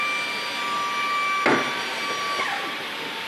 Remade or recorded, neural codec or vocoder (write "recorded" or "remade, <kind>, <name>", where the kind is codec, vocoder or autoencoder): recorded